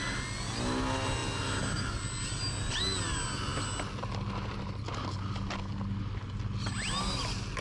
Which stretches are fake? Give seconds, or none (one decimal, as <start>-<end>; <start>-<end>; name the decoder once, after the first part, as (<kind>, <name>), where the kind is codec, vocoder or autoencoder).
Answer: none